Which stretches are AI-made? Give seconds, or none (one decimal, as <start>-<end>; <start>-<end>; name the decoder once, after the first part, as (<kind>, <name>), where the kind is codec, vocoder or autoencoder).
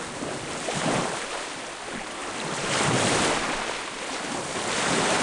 none